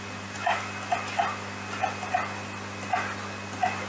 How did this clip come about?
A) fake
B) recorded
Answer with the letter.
B